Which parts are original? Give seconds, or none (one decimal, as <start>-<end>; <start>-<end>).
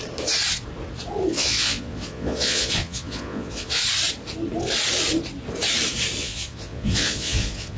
0.0-1.3; 3.8-6.2